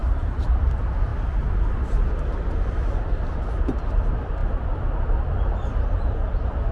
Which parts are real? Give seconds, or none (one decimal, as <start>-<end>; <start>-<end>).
0.7-6.7